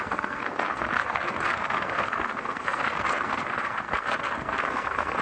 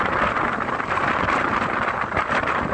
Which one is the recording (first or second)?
second